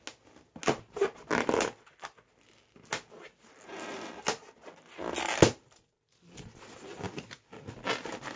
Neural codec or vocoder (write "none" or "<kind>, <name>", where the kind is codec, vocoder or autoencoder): none